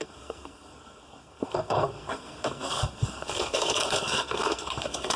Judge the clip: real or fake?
fake